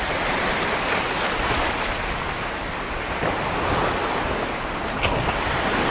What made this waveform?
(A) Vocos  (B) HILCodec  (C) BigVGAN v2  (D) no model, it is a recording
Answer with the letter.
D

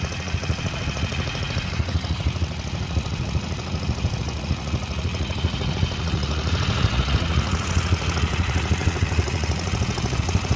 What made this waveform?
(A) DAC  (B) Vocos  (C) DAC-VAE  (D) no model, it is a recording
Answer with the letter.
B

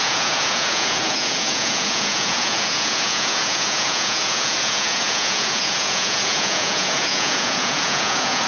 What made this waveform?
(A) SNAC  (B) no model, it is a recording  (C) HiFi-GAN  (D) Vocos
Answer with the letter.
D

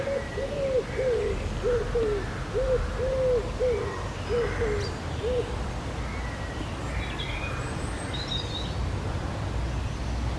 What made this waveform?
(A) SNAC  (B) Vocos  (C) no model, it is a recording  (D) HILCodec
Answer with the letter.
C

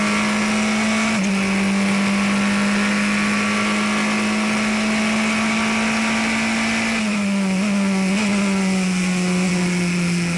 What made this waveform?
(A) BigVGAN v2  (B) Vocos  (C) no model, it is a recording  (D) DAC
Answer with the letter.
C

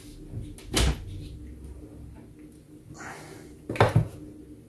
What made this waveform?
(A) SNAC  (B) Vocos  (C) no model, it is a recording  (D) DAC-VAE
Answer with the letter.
C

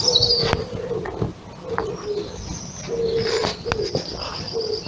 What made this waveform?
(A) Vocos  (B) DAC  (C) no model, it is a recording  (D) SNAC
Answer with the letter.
C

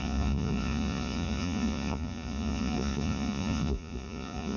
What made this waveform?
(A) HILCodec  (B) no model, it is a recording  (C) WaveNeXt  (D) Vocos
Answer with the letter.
D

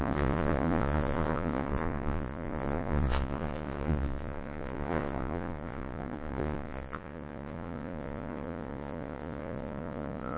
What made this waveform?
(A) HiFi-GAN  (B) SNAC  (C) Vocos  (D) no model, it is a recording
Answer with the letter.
C